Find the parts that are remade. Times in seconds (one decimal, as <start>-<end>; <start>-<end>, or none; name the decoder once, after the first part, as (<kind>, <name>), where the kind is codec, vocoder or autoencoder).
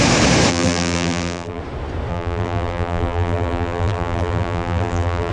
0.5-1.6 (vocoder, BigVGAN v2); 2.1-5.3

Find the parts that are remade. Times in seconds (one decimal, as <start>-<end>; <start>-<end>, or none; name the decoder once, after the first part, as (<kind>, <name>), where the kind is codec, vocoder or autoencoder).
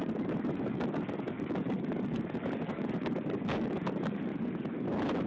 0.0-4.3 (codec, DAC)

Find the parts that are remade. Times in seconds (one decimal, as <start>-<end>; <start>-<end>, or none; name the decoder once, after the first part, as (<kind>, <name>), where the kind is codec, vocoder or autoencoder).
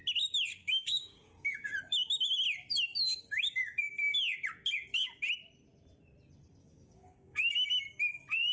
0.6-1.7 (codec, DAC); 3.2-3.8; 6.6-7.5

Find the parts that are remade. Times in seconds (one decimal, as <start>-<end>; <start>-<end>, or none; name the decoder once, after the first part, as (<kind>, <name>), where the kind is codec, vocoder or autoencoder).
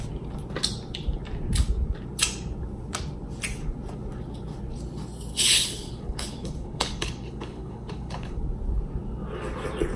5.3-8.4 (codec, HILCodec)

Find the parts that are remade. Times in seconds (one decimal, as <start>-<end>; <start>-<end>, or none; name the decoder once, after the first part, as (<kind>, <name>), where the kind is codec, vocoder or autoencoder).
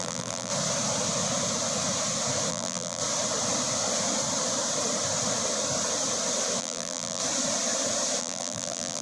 0.0-0.5 (vocoder, BigVGAN v2); 2.5-3.0; 6.6-7.2; 8.2-9.0